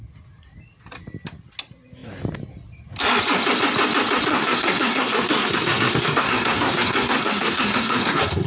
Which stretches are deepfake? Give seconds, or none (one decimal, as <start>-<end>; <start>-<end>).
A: 4.3-8.5